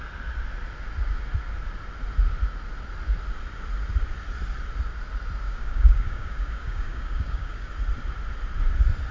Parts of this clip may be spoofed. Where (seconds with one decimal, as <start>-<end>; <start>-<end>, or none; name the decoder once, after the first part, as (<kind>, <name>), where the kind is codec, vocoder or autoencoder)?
5.4-7.7 (codec, DAC)